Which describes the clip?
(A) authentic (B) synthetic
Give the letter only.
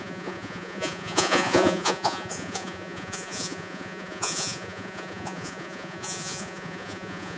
B